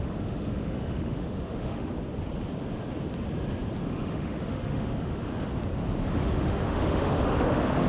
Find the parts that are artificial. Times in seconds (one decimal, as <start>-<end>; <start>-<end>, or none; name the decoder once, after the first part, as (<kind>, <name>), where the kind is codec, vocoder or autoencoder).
0.0-1.9 (autoencoder, DAC-VAE); 3.9-5.3; 6.0-7.9